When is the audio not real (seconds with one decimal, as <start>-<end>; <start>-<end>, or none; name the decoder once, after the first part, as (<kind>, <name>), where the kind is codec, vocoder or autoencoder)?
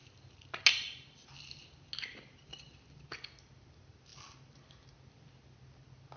none